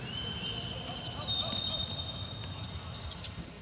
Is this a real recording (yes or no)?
yes